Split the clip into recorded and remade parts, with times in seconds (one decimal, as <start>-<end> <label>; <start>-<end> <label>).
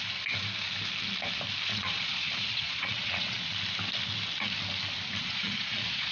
0.0-1.7 recorded; 1.7-3.6 remade; 3.6-5.2 recorded; 5.2-6.1 remade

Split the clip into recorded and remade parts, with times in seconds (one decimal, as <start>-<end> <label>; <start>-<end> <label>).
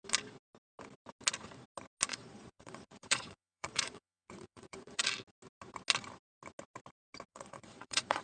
0.0-2.1 recorded; 2.1-5.0 remade; 5.0-7.3 recorded; 7.3-8.2 remade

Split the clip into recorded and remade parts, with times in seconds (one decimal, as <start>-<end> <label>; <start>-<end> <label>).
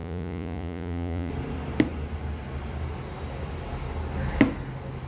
0.0-1.3 remade; 1.3-5.1 recorded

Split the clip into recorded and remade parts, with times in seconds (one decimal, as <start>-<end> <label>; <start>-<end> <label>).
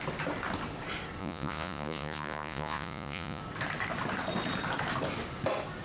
0.0-1.2 recorded; 1.2-3.4 remade; 3.4-5.8 recorded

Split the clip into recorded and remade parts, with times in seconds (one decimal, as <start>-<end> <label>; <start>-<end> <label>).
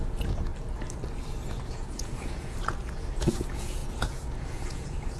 0.0-0.5 remade; 0.5-1.5 recorded; 1.5-5.2 remade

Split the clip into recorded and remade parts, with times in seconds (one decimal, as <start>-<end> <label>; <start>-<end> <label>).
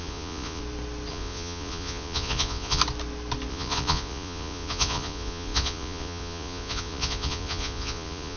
0.0-0.6 remade; 0.6-1.1 recorded; 1.1-2.8 remade; 2.8-3.5 recorded; 3.5-8.4 remade